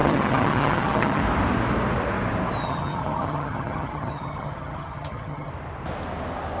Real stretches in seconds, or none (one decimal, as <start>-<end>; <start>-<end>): 1.2-2.6; 5.5-6.6